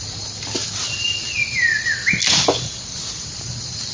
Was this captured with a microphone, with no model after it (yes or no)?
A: yes